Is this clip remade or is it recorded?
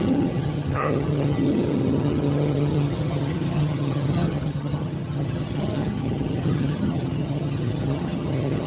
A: remade